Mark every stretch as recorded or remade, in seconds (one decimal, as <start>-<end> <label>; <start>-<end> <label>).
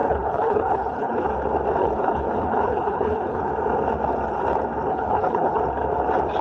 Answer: 0.0-1.3 remade; 1.3-1.8 recorded; 1.8-3.5 remade; 3.5-4.9 recorded; 4.9-5.6 remade; 5.6-6.4 recorded